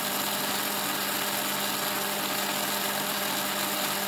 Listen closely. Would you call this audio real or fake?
real